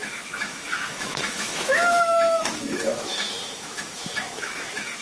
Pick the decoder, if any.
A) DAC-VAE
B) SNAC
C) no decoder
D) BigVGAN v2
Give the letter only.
A